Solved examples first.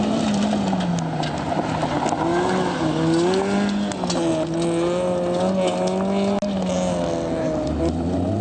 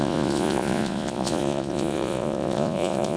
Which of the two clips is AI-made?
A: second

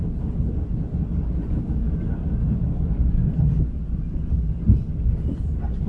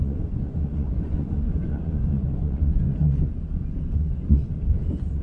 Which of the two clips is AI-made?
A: second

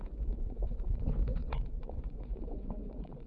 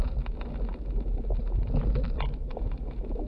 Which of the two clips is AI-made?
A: first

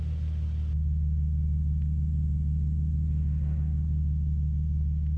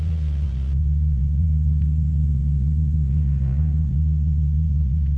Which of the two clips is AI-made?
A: second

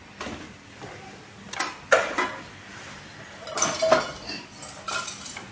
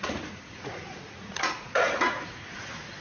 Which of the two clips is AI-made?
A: second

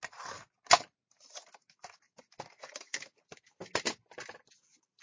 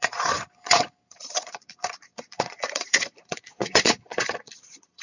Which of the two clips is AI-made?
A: second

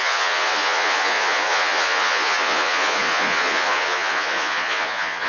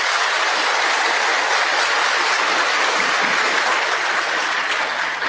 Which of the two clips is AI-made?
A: first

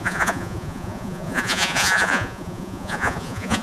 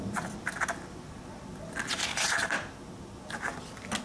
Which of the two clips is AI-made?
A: first